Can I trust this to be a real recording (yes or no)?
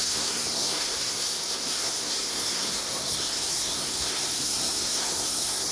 no